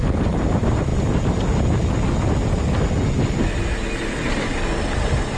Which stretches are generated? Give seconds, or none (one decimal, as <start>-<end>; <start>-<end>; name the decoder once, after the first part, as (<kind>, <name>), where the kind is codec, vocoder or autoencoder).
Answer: none